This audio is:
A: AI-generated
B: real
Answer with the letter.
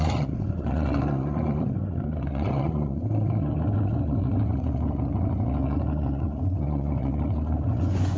A